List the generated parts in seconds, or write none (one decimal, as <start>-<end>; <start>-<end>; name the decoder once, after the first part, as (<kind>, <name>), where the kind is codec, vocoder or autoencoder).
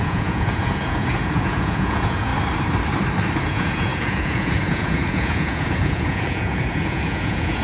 0.0-2.3 (vocoder, Vocos); 3.4-7.6